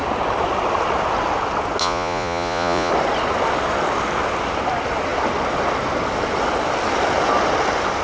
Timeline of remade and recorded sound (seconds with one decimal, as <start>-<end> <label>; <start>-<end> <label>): 0.0-1.8 recorded; 1.8-2.9 remade; 2.9-8.0 recorded